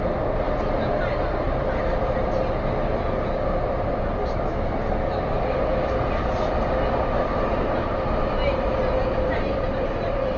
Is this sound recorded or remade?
recorded